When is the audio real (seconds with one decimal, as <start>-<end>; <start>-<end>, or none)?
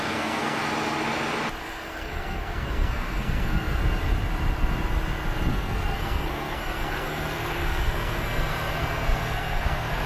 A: 0.6-1.6; 3.8-5.5